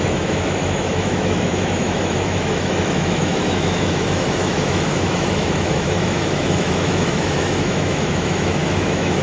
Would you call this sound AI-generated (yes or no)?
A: yes